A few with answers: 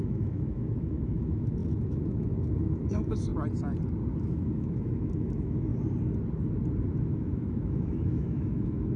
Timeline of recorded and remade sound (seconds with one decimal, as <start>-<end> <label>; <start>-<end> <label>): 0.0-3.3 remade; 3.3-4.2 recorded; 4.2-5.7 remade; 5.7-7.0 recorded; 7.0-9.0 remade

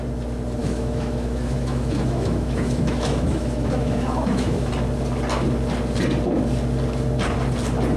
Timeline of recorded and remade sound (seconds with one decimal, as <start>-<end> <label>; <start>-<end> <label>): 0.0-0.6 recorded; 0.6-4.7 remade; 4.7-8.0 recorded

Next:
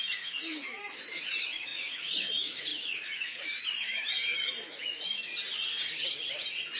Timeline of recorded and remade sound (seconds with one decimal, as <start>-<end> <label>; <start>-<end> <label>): 0.0-4.1 remade; 4.1-4.7 recorded; 4.7-5.3 remade; 5.3-6.8 recorded